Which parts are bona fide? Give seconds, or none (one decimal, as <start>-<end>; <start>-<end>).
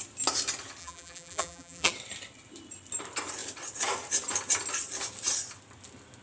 0.0-0.8; 1.9-6.2